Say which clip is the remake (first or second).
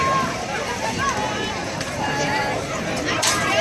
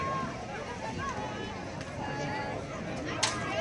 first